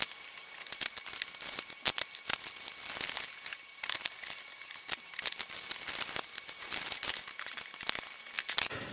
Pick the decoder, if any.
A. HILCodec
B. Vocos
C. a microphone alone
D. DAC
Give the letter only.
C